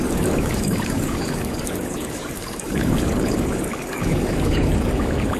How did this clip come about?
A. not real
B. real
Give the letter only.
A